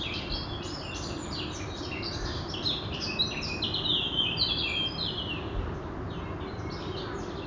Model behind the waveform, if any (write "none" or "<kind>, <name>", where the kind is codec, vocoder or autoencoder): none